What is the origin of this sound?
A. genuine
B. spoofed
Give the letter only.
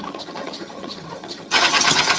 B